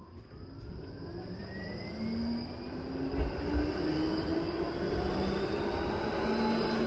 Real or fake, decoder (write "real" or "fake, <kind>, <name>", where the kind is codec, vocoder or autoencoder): real